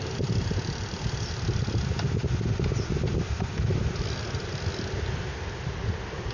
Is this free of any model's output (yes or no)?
yes